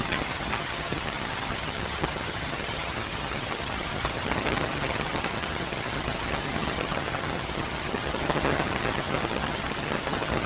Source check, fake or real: fake